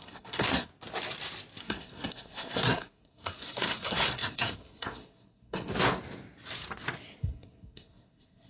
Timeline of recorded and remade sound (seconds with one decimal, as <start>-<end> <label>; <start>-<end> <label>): 0.0-0.7 remade; 0.7-1.6 recorded; 1.6-5.7 remade; 5.7-7.2 recorded; 7.2-8.5 remade

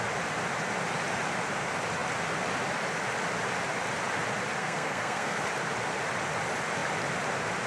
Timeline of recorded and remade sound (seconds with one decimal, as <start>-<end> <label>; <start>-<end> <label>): 0.0-4.6 recorded; 4.6-5.4 remade; 5.4-7.7 recorded

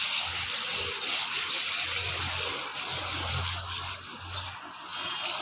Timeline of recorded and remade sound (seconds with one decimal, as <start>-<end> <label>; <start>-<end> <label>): 0.0-5.4 recorded

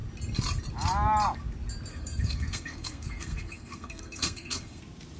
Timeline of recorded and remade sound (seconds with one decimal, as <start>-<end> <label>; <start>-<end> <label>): 0.0-1.9 recorded; 1.9-4.8 remade; 4.8-5.2 recorded

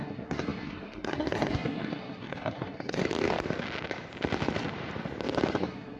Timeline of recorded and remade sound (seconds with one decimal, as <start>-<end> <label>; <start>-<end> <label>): 0.0-3.0 remade; 3.0-5.5 recorded; 5.5-6.0 remade

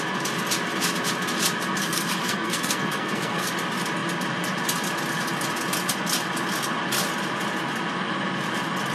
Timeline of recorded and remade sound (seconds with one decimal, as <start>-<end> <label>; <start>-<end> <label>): 0.0-1.8 recorded; 1.8-3.5 remade; 3.5-8.9 recorded

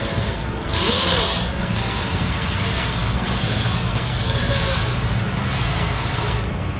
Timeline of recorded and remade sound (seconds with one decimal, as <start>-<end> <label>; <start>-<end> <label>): 0.0-4.9 remade; 4.9-5.4 recorded; 5.4-6.8 remade

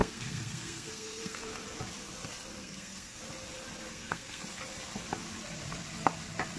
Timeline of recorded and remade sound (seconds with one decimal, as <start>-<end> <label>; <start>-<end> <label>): 0.0-1.4 remade; 1.4-2.6 recorded; 2.6-3.2 remade; 3.2-3.9 recorded; 3.9-4.4 remade; 4.4-6.6 recorded